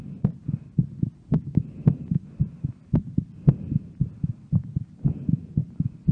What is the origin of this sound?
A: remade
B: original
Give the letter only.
A